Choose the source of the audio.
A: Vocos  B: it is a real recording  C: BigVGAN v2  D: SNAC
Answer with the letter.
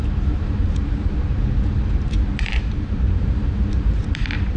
C